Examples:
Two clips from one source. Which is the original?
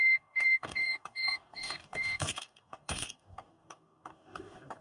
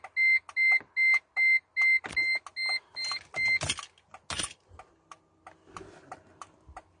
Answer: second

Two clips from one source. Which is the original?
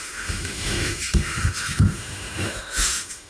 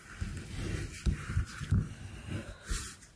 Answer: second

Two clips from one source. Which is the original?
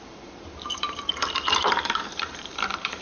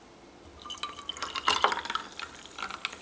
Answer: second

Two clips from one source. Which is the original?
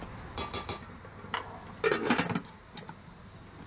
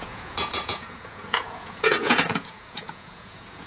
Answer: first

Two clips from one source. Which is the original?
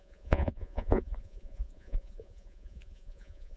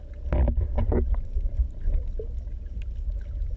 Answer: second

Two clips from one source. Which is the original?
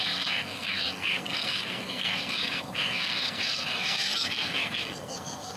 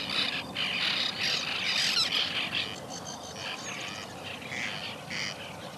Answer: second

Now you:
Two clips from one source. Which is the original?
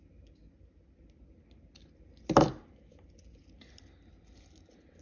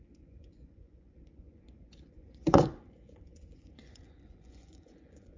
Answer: first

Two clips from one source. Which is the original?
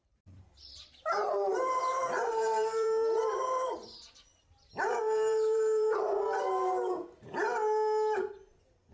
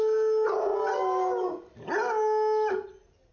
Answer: second